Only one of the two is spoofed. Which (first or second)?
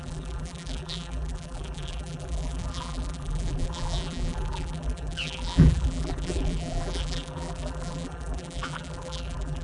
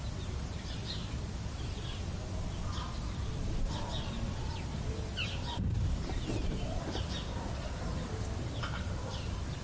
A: first